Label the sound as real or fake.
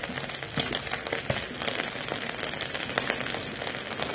real